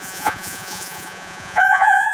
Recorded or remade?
remade